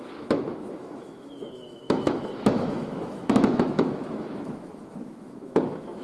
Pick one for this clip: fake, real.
fake